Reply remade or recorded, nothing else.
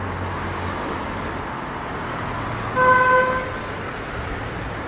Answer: recorded